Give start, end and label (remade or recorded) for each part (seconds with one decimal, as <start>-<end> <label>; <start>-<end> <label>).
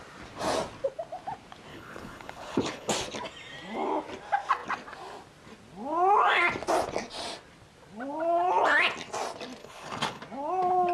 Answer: 0.0-1.7 recorded; 1.7-2.9 remade; 2.9-9.6 recorded; 9.6-10.2 remade; 10.2-10.9 recorded